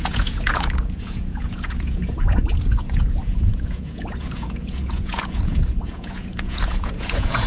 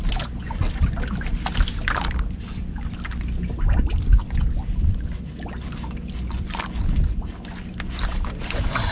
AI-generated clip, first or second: first